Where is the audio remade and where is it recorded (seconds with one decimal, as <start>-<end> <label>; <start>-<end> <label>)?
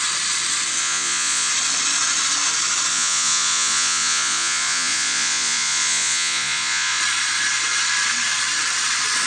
0.0-0.8 recorded; 0.8-1.5 remade; 1.5-2.9 recorded; 2.9-7.0 remade; 7.0-9.3 recorded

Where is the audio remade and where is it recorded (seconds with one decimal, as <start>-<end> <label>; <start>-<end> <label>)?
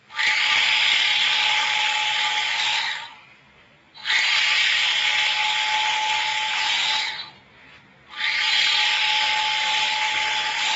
0.0-6.3 recorded; 6.3-7.1 remade; 7.1-10.8 recorded